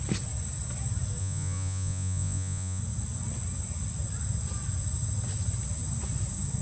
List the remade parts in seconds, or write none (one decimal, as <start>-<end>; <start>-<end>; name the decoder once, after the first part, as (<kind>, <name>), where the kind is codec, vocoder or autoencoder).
1.2-2.8 (vocoder, Vocos)